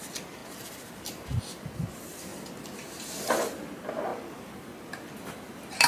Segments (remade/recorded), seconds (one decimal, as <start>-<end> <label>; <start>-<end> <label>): 0.0-0.4 remade; 0.4-1.0 recorded; 1.0-2.3 remade; 2.3-3.2 recorded; 3.2-5.9 remade